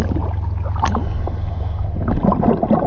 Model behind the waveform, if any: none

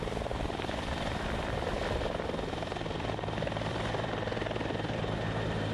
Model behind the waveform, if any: vocoder, BigVGAN v2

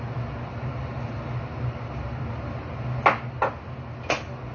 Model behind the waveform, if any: none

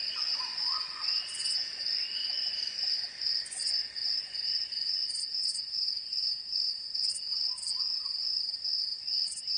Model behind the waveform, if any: vocoder, Vocos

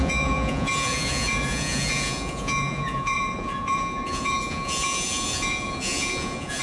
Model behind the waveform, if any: vocoder, Vocos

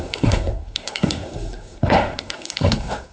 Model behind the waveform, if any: codec, SNAC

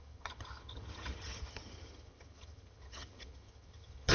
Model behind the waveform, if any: vocoder, HiFi-GAN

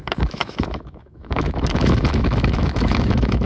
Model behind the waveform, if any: autoencoder, DAC-VAE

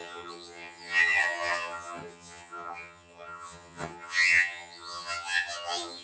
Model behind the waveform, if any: vocoder, HiFi-GAN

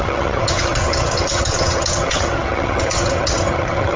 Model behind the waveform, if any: vocoder, HiFi-GAN